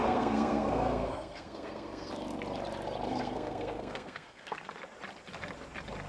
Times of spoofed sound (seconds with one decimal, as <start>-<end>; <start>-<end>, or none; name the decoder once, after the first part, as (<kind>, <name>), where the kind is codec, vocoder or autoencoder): 0.0-2.1 (codec, SNAC); 3.1-4.7

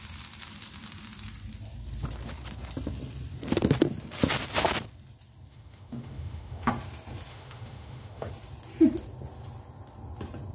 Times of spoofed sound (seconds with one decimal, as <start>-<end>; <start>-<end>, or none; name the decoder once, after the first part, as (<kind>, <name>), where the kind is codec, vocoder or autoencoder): 5.5-6.7 (autoencoder, DAC-VAE); 7.3-8.3

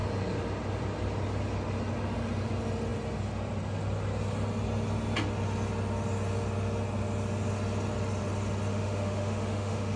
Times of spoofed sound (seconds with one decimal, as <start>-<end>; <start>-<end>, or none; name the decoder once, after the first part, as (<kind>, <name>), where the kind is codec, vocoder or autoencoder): 8.7-10.0 (autoencoder, DAC-VAE)

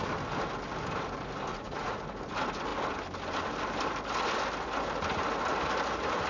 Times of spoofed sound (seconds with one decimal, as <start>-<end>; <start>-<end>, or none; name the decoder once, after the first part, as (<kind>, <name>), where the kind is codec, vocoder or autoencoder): 1.5-2.0 (vocoder, Vocos)

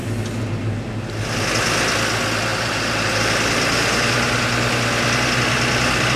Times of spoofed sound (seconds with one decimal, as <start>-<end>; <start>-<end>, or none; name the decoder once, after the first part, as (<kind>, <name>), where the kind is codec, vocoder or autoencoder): 2.5-3.3 (vocoder, BigVGAN v2)

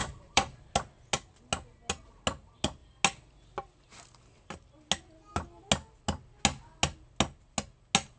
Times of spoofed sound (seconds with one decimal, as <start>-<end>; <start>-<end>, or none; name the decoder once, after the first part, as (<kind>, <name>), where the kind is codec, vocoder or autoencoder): 0.0-0.6 (vocoder, BigVGAN v2)

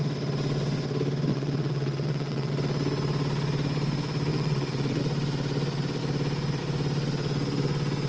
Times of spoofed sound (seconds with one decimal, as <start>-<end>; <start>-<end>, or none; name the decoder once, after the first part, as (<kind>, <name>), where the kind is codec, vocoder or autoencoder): 1.3-2.5 (vocoder, WaveNeXt); 4.3-5.0

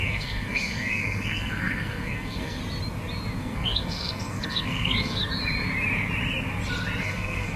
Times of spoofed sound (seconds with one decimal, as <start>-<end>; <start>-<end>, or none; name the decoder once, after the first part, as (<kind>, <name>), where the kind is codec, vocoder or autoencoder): 0.0-2.6 (codec, SNAC); 3.4-5.2; 7.0-7.6